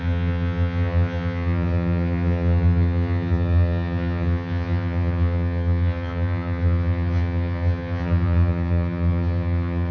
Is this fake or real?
fake